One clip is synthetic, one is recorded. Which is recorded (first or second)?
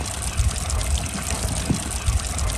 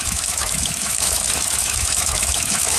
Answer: first